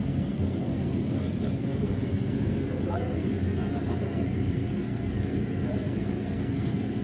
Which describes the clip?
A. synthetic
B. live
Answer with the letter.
A